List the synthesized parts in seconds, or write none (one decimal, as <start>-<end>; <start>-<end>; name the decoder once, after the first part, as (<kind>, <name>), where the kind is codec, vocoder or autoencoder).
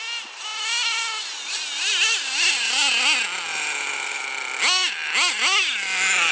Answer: none